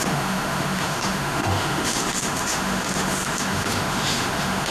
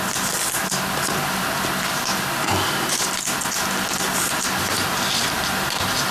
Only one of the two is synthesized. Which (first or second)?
first